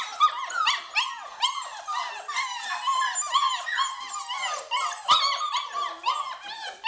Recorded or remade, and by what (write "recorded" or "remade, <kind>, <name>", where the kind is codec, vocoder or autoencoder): recorded